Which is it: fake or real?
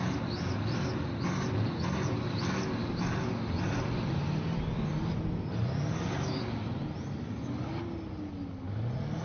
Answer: real